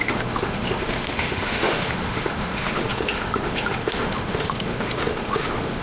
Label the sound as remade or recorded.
remade